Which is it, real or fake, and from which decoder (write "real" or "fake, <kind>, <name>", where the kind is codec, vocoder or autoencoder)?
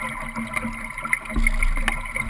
real